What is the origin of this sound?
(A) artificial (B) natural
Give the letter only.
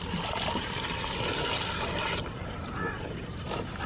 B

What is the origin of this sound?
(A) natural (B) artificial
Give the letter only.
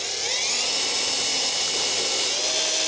A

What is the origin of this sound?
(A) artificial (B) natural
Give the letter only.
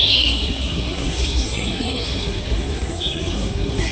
A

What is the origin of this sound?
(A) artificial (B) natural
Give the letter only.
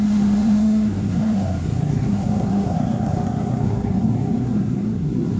A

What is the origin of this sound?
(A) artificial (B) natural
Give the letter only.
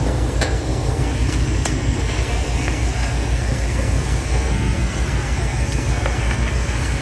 A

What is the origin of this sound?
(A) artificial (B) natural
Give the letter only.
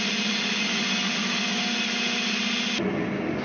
B